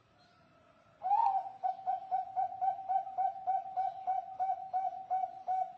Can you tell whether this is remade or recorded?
recorded